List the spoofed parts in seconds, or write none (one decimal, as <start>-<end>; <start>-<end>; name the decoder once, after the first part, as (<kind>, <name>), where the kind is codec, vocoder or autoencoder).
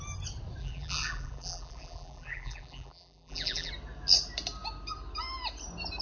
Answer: 0.6-3.7 (vocoder, BigVGAN v2)